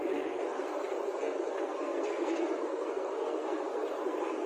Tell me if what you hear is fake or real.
fake